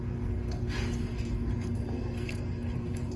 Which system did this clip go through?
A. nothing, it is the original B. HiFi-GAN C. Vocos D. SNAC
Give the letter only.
D